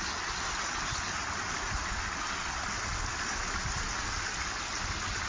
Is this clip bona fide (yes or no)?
yes